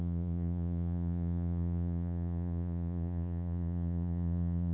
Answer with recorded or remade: remade